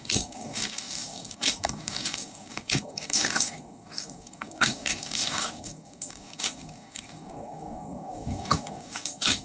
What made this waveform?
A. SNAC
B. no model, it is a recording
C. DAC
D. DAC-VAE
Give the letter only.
C